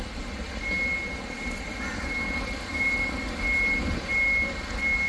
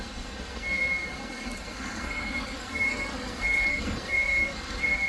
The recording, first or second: first